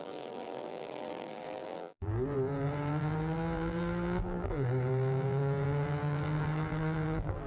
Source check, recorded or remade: remade